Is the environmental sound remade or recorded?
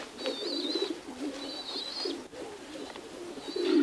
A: recorded